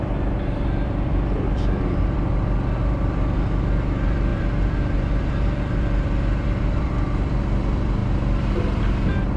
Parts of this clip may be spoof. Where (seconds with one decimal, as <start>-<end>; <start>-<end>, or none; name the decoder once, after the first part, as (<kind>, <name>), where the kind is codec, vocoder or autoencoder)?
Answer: 0.0-9.4 (vocoder, BigVGAN v2)